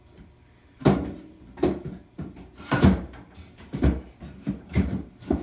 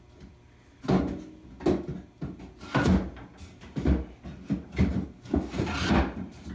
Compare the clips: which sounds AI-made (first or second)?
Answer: first